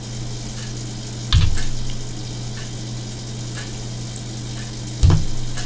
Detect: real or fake real